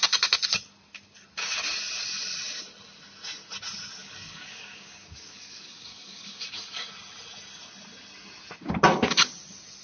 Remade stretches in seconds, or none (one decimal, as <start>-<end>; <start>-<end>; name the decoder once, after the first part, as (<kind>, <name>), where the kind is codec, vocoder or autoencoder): 4.0-6.9 (codec, DAC)